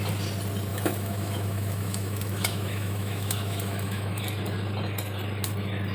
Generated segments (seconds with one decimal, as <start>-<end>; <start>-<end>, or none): 0.7-4.2